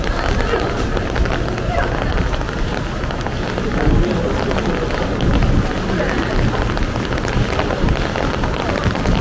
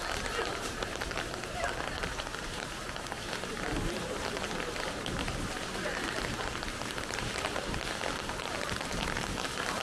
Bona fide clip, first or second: first